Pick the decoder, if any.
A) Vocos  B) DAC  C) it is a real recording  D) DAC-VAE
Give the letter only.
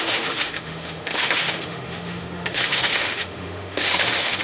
D